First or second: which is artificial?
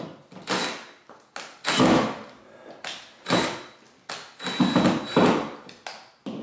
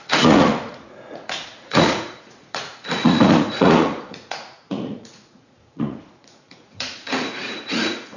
second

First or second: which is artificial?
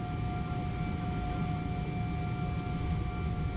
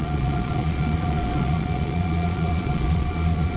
second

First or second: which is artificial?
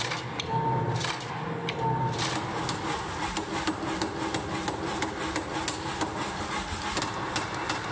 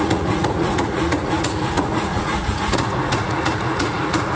second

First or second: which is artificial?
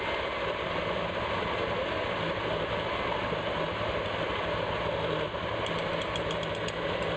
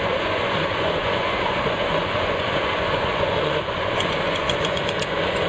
second